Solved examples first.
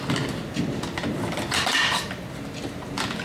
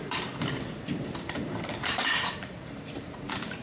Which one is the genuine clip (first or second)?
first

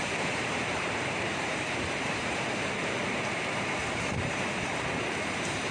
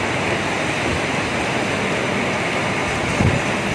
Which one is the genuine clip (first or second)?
second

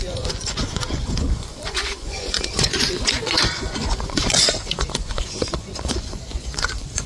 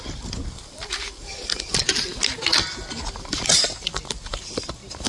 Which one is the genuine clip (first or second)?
second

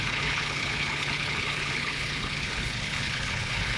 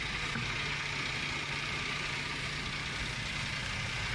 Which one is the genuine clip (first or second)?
second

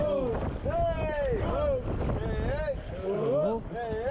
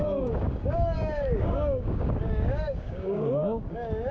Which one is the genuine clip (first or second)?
first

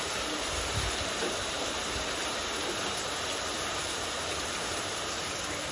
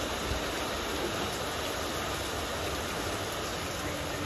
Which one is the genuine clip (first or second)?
second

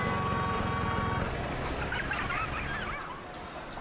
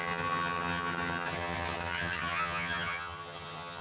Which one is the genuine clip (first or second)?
first